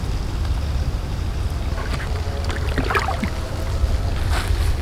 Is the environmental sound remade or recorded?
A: recorded